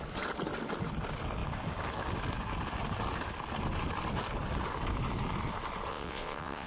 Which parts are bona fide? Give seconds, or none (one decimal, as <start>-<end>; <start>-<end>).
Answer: 0.0-5.9